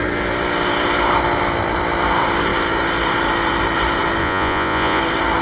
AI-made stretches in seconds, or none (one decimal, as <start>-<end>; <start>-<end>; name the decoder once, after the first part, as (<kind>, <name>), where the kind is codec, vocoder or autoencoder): 4.2-5.0 (vocoder, Vocos)